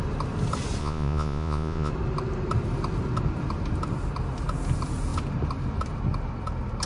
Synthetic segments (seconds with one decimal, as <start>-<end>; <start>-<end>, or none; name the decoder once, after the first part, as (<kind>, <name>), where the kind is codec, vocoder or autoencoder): 0.8-1.9 (vocoder, Vocos)